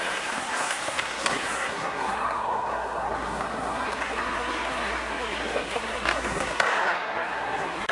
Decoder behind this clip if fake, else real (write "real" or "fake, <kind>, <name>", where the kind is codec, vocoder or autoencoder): fake, codec, SNAC